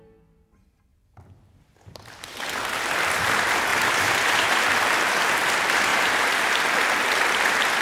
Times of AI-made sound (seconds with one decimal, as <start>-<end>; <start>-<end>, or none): 3.7-4.5; 5.9-6.5